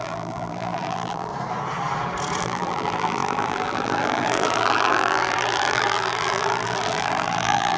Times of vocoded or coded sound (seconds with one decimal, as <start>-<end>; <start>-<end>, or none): 0.0-1.3; 2.4-7.8